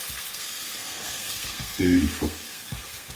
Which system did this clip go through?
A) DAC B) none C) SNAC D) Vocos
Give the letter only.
C